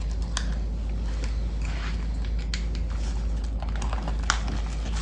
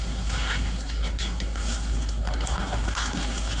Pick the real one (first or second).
first